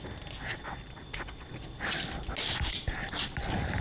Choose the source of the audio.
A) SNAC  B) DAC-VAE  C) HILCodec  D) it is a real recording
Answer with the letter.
D